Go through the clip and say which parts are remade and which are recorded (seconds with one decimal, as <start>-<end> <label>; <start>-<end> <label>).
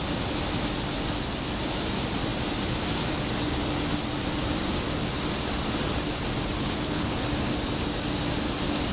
0.0-6.6 recorded; 6.6-7.2 remade; 7.2-8.9 recorded